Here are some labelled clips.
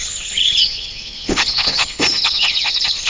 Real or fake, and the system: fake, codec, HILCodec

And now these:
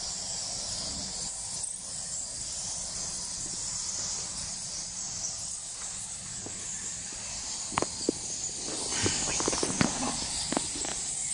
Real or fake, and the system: real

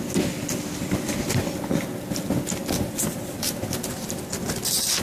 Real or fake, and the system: real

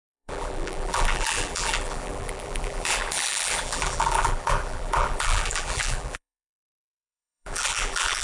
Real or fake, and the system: fake, vocoder, BigVGAN v2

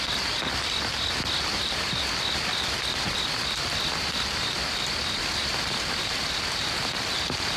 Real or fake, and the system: real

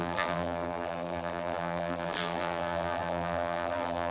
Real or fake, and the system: fake, vocoder, BigVGAN v2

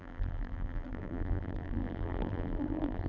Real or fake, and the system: fake, vocoder, BigVGAN v2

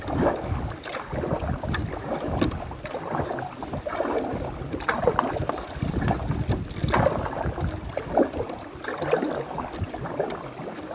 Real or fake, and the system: real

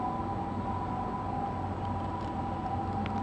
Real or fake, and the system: real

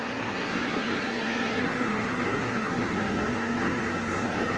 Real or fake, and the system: fake, codec, SNAC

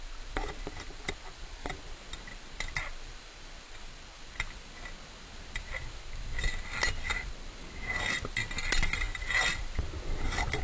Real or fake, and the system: real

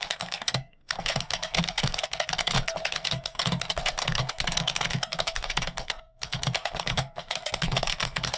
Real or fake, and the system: fake, codec, SNAC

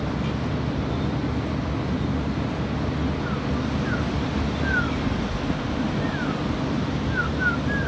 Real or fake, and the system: real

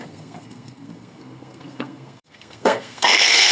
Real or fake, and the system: fake, codec, SNAC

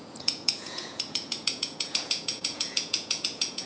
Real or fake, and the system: fake, vocoder, Vocos